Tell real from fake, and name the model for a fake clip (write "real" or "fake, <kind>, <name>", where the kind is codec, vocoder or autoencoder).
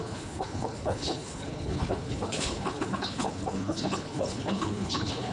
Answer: fake, codec, HILCodec